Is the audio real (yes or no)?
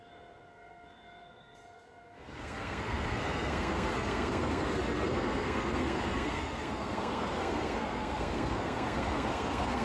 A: no